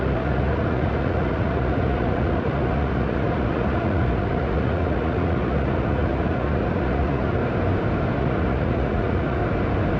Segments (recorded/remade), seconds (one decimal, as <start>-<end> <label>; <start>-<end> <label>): 0.0-7.4 remade; 7.4-8.2 recorded; 8.2-9.4 remade; 9.4-10.0 recorded